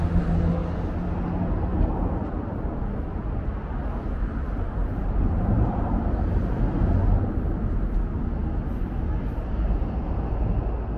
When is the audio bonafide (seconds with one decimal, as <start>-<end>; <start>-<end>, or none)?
0.0-4.8; 6.9-11.0